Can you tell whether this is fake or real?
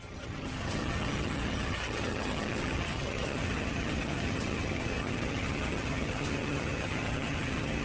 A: fake